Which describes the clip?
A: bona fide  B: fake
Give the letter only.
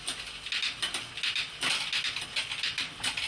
A